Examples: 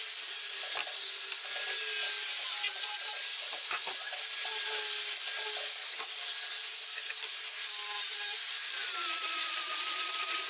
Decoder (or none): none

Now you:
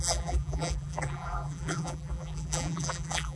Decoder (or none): vocoder, BigVGAN v2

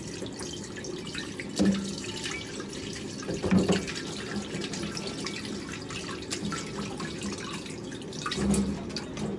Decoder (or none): none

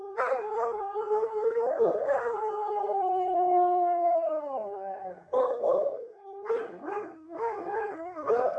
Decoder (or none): codec, SNAC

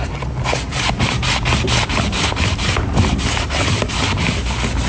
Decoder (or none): none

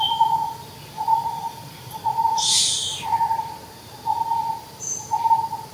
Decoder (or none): none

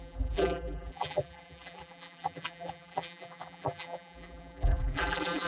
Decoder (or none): vocoder, BigVGAN v2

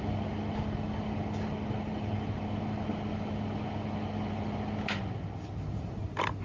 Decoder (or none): none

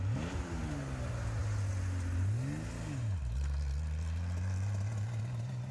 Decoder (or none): none